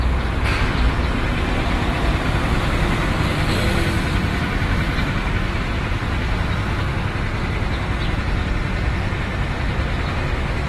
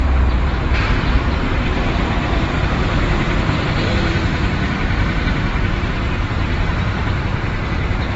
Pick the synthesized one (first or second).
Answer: second